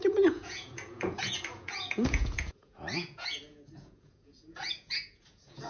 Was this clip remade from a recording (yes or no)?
yes